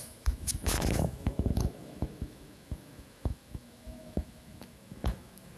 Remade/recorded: remade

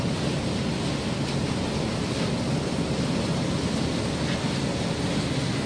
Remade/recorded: recorded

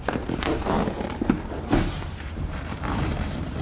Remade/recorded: remade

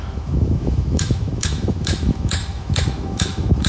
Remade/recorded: remade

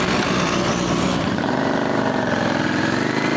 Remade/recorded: remade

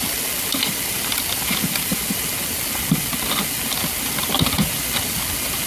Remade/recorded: recorded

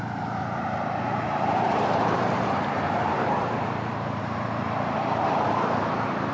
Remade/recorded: remade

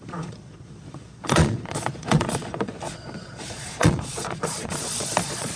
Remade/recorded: remade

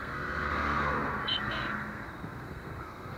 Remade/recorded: remade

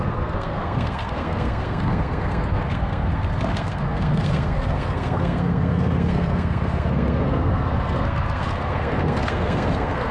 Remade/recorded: remade